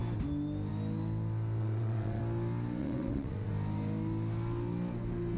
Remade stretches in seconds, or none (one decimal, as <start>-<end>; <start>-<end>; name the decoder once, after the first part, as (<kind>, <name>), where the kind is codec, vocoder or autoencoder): 1.6-2.2 (vocoder, WaveNeXt); 2.8-3.5